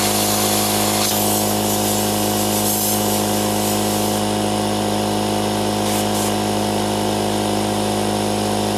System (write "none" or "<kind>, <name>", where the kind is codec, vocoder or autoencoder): none